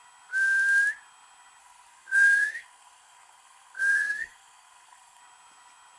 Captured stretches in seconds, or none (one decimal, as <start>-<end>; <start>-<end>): 0.0-1.6; 5.2-6.0

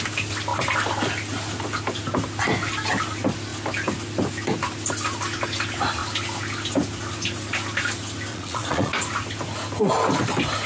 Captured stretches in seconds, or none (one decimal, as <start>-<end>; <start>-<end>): 0.0-8.3; 8.9-10.7

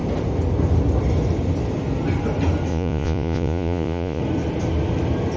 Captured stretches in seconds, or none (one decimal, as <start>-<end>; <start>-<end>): 0.0-2.7; 4.2-5.4

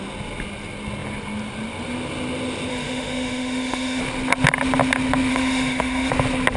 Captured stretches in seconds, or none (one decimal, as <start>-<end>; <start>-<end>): 0.0-2.7; 4.0-5.3; 6.1-6.6

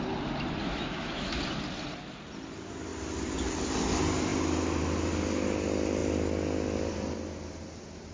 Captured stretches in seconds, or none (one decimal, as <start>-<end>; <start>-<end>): 0.0-0.6; 1.4-8.1

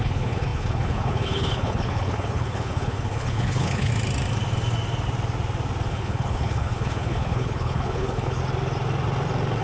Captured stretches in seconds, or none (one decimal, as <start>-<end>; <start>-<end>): 3.9-5.9; 8.4-9.6